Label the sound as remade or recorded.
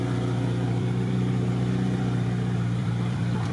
remade